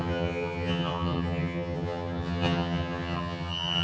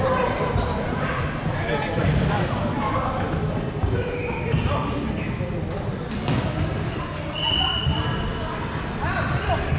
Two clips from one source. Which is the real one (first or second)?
second